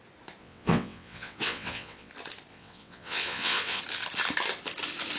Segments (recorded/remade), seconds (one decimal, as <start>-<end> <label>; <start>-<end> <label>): 0.0-0.4 recorded; 0.4-2.1 remade; 2.1-2.5 recorded; 2.5-3.8 remade; 3.8-5.2 recorded